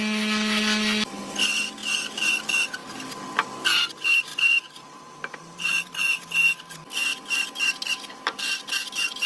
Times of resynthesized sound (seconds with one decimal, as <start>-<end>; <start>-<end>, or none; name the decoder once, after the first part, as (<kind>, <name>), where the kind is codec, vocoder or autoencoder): 4.3-5.7 (vocoder, BigVGAN v2)